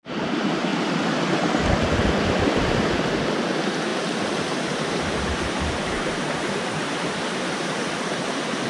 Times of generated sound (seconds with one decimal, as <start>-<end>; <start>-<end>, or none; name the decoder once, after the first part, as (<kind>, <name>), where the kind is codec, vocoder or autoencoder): 0.0-0.7 (vocoder, BigVGAN v2); 2.4-3.9; 4.6-8.7